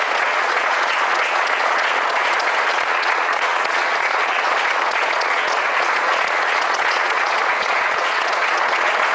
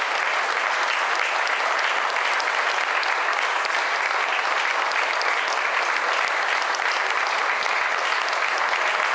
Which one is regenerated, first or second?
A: first